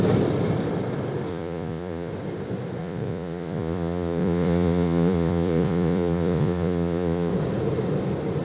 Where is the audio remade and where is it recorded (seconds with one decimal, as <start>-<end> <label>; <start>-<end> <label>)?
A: 0.0-1.3 recorded; 1.3-2.1 remade; 2.1-2.8 recorded; 2.8-7.3 remade; 7.3-8.4 recorded